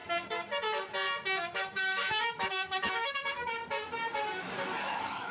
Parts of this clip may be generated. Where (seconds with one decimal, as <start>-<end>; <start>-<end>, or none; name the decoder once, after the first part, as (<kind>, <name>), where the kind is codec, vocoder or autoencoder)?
1.4-3.6 (autoencoder, DAC-VAE); 4.8-5.3